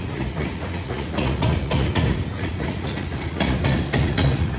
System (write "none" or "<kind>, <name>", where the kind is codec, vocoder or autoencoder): vocoder, Vocos